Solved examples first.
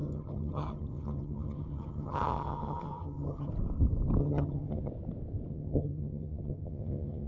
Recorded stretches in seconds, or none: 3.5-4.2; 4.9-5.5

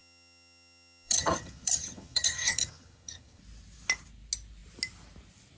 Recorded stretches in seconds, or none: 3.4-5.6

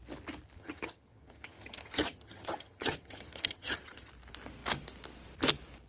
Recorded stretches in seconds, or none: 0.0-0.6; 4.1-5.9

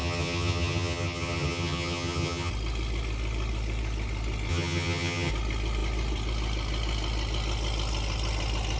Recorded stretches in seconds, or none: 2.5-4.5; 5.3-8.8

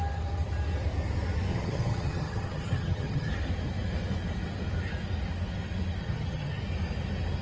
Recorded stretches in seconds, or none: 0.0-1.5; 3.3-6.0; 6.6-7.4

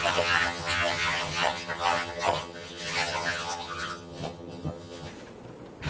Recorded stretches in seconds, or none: 5.1-5.9

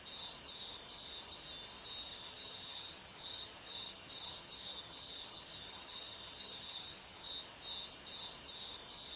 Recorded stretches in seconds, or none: 0.0-2.1; 7.3-9.2

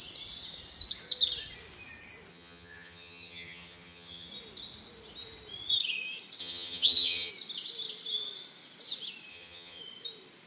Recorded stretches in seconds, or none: 0.0-2.3; 4.3-6.4; 7.3-9.3; 9.8-10.5